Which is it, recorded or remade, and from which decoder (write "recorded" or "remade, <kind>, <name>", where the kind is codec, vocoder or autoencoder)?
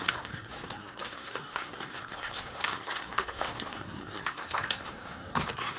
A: remade, codec, SNAC